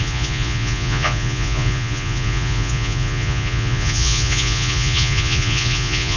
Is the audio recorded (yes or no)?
no